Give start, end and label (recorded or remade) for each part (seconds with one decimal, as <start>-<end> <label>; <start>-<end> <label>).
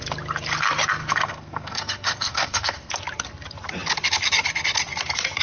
0.0-1.0 recorded; 1.0-2.9 remade; 2.9-5.4 recorded